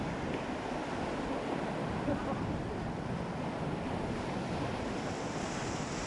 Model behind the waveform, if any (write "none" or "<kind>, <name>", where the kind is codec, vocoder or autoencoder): none